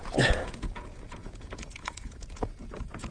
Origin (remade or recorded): remade